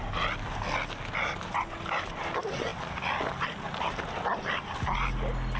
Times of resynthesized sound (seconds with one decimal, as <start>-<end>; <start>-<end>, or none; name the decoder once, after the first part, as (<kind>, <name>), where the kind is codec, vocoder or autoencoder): none